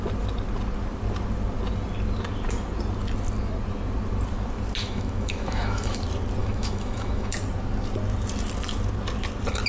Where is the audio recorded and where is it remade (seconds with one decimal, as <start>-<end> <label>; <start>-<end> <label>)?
0.0-4.8 recorded; 4.8-6.0 remade; 6.0-6.4 recorded; 6.4-7.3 remade; 7.3-9.7 recorded